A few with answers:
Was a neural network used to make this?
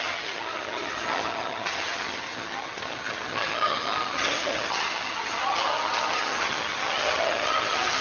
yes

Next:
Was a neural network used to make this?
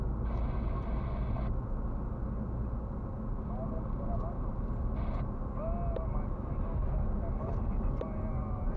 no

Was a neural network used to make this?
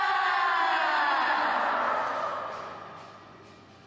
yes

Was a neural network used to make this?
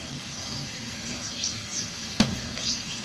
yes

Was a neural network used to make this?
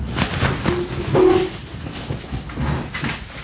no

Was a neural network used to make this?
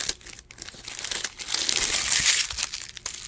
no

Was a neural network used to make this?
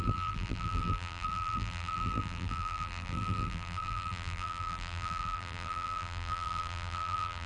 yes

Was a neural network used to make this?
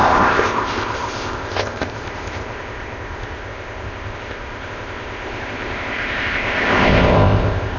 yes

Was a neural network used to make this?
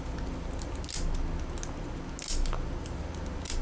no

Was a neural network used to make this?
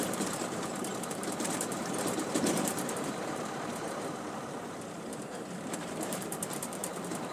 yes